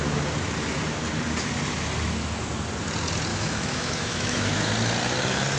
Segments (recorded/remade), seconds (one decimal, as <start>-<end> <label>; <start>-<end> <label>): 0.0-3.3 recorded; 3.3-4.7 remade; 4.7-5.6 recorded